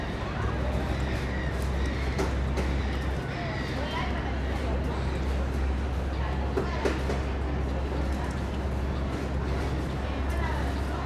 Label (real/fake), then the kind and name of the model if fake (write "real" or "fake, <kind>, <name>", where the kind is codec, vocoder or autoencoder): real